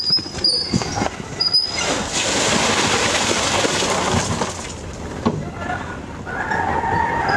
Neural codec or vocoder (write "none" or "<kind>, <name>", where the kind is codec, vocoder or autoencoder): none